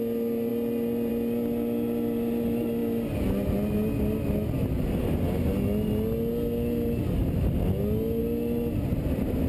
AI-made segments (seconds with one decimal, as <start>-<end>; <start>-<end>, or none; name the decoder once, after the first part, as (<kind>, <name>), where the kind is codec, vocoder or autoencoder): none